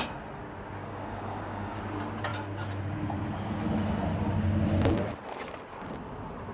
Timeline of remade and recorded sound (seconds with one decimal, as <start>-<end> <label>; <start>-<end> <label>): 0.0-0.8 recorded; 0.8-1.8 remade; 1.8-6.5 recorded